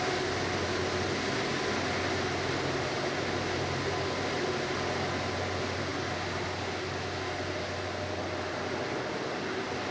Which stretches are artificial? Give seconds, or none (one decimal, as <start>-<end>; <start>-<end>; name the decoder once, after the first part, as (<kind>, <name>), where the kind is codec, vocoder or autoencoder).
none